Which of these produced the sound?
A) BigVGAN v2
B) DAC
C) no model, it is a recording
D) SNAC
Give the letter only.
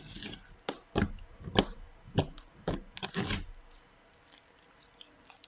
C